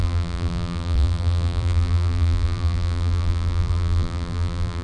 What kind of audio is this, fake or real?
fake